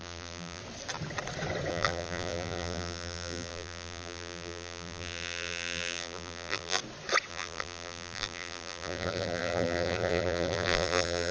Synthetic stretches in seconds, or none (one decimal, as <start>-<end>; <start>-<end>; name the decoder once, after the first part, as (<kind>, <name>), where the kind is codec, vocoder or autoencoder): 0.0-0.6 (vocoder, BigVGAN v2); 1.7-6.8; 7.3-11.3